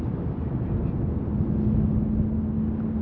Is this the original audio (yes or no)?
yes